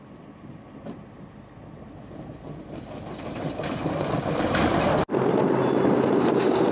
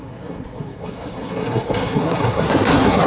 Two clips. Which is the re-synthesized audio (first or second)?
second